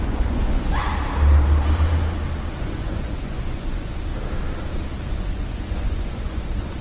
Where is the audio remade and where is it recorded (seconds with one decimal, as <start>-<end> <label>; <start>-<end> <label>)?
0.0-0.9 remade; 0.9-2.6 recorded; 2.6-4.1 remade; 4.1-5.1 recorded; 5.1-6.8 remade